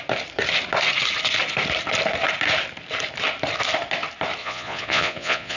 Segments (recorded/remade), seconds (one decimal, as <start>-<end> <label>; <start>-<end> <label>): 0.0-4.4 recorded; 4.4-5.6 remade